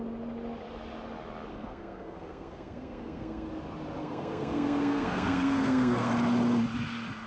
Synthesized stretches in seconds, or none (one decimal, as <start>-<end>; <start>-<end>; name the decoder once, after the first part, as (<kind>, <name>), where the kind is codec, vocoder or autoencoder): 1.5-3.5 (codec, SNAC); 4.0-6.1